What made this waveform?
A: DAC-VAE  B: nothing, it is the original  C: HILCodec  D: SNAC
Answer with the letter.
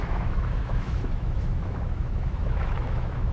A